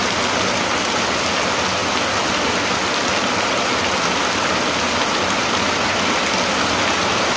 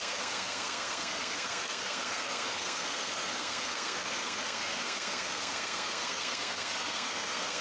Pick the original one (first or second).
first